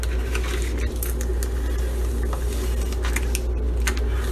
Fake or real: real